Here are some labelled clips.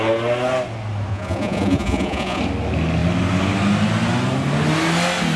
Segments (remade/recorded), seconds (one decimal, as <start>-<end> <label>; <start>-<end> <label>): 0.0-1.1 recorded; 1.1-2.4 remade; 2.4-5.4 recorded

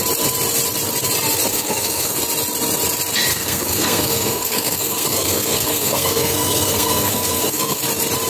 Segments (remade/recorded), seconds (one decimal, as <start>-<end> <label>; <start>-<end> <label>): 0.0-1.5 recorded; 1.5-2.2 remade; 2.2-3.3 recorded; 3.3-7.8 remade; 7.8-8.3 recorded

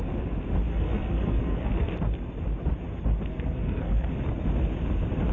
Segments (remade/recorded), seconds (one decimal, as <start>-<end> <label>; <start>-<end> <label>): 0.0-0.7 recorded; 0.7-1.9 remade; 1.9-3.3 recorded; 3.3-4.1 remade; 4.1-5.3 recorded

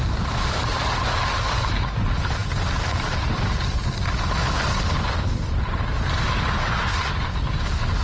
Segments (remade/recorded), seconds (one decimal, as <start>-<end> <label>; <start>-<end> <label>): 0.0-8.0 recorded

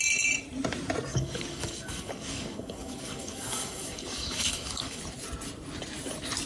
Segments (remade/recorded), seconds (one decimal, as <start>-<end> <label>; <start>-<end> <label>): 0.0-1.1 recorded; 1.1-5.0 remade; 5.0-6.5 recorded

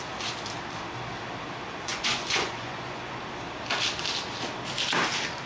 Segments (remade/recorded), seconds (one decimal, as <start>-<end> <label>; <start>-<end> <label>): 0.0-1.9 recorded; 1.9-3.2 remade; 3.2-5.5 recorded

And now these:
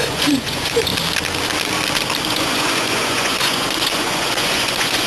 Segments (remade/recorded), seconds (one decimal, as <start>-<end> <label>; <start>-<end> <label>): 0.0-0.9 remade; 0.9-2.3 recorded; 2.3-5.1 remade

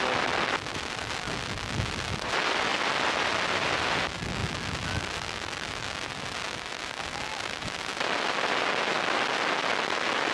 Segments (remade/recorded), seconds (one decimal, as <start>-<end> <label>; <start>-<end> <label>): 0.0-10.3 recorded